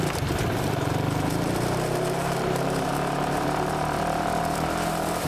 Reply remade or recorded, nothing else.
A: remade